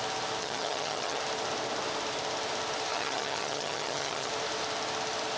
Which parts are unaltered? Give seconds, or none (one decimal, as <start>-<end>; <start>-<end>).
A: 0.0-0.4; 1.2-2.9; 4.3-5.4